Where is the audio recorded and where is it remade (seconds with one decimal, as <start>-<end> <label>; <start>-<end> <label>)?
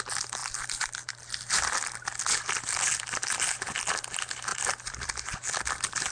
0.0-0.4 recorded; 0.4-1.3 remade; 1.3-6.1 recorded